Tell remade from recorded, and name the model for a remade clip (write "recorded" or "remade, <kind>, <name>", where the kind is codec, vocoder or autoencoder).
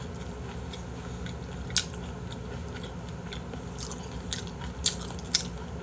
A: recorded